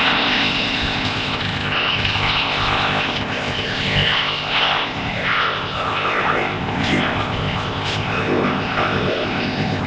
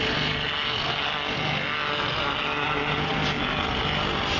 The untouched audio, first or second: second